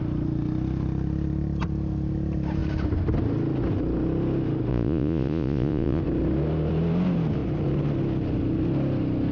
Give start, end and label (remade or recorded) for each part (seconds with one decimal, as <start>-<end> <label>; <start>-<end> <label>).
0.0-4.7 recorded; 4.7-6.0 remade; 6.0-9.3 recorded